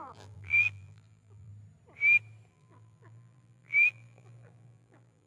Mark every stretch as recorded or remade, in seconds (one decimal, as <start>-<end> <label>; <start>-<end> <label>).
0.0-1.5 remade; 1.5-2.5 recorded; 2.5-5.3 remade